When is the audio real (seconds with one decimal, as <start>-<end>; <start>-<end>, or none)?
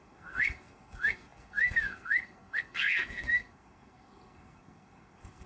none